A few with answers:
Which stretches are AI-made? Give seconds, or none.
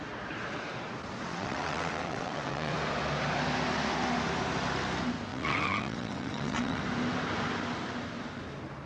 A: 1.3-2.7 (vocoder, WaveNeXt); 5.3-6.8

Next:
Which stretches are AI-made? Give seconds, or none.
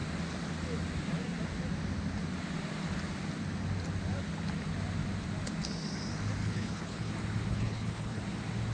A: 6.4-7.1 (codec, HILCodec); 7.5-8.2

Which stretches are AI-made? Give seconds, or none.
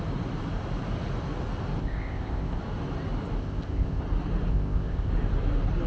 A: 1.8-2.6 (codec, ZipCodec); 3.4-4.0; 4.5-5.1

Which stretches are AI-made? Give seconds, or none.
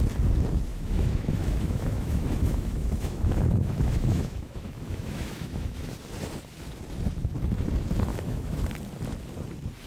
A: 0.7-5.9 (autoencoder, DAC-VAE); 8.1-8.6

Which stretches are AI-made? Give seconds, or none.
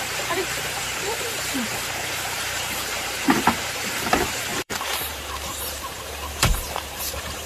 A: 0.0-7.5 (vocoder, BigVGAN v2)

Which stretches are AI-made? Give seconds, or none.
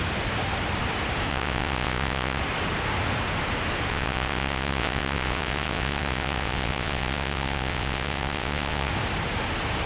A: 1.3-2.4 (vocoder, WaveNeXt); 3.9-8.9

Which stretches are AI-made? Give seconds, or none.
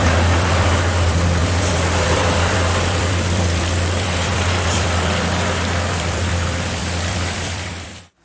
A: 0.0-8.2 (vocoder, BigVGAN v2)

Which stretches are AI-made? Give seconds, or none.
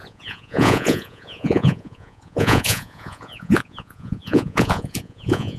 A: 0.0-5.6 (vocoder, Vocos)